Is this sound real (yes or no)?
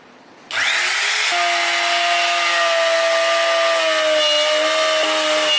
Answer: yes